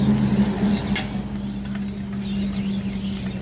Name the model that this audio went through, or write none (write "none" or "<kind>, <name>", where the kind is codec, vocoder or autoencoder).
none